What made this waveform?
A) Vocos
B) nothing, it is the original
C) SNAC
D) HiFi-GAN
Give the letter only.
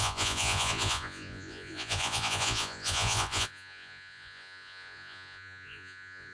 A